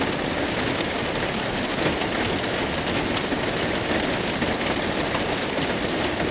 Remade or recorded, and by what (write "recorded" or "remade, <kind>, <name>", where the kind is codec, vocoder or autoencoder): recorded